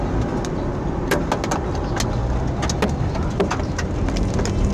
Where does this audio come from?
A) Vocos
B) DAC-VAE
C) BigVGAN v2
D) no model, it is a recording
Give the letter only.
D